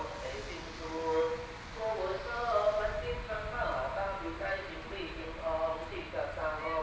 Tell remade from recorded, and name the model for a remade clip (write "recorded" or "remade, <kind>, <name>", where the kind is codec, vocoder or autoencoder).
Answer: recorded